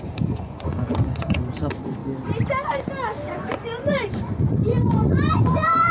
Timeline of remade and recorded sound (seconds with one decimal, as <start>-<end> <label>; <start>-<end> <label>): 0.0-2.0 remade; 2.0-3.3 recorded; 3.3-5.9 remade